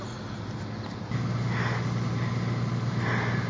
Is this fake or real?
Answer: real